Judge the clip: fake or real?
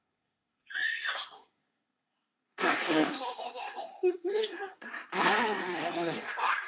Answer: fake